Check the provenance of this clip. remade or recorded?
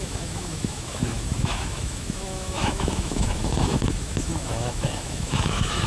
remade